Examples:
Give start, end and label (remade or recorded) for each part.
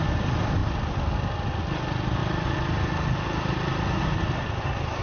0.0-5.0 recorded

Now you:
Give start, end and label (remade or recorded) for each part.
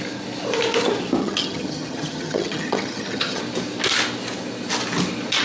0.0-1.2 recorded; 1.2-3.4 remade; 3.4-5.4 recorded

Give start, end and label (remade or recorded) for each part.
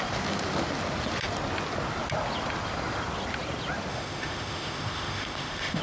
0.0-3.9 recorded; 3.9-5.8 remade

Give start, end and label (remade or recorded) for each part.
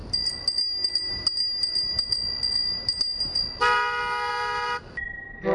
0.0-5.5 recorded